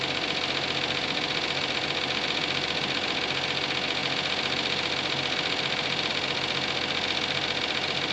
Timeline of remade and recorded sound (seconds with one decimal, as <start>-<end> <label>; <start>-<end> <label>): 0.0-8.1 recorded

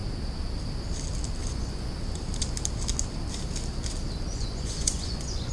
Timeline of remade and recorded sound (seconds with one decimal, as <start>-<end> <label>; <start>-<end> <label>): 0.0-1.4 recorded; 1.4-2.0 remade; 2.0-4.3 recorded; 4.3-5.5 remade

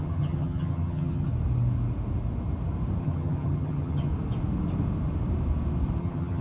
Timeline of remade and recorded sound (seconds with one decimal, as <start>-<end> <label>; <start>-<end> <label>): 0.0-1.3 remade; 1.3-3.0 recorded; 3.0-4.1 remade; 4.1-6.0 recorded; 6.0-6.4 remade

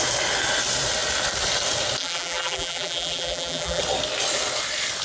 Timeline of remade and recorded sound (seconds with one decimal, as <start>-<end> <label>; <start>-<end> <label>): 0.0-2.0 recorded; 2.0-3.8 remade; 3.8-5.0 recorded

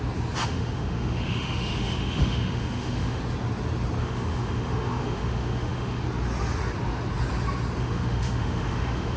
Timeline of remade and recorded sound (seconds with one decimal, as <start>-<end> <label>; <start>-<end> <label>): 0.0-0.4 recorded; 0.4-3.2 remade; 3.2-4.0 recorded; 4.0-6.0 remade; 6.0-7.8 recorded; 7.8-9.2 remade

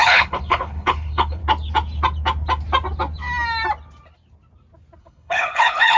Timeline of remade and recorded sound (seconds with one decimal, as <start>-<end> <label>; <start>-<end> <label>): 0.0-1.4 remade; 1.4-5.0 recorded; 5.0-6.0 remade

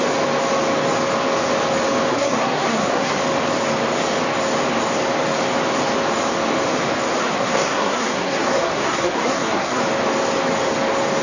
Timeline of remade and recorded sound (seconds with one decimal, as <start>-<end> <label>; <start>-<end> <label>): 0.0-2.1 recorded; 2.1-3.2 remade; 3.2-7.2 recorded; 7.2-9.8 remade; 9.8-11.2 recorded

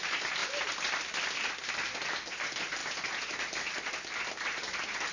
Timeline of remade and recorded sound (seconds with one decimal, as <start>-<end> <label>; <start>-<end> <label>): 0.0-5.1 recorded